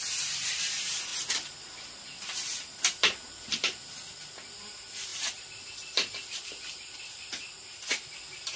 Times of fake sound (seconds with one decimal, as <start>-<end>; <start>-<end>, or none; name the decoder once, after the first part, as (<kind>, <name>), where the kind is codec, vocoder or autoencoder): none